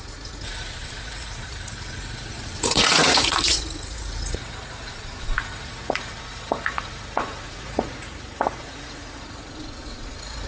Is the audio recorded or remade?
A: remade